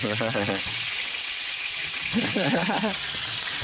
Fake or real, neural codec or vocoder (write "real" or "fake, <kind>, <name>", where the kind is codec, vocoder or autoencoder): fake, vocoder, WaveNeXt